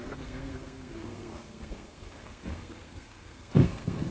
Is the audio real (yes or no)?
no